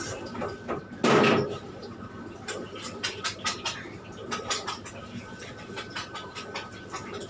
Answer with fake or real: real